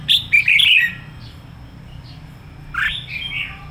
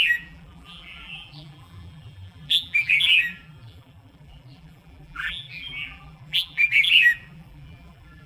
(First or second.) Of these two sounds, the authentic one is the first